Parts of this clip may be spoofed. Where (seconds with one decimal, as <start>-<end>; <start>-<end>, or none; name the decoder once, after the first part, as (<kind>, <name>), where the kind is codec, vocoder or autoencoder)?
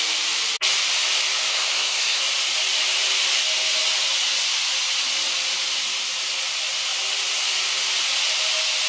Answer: 1.5-2.2 (codec, SNAC)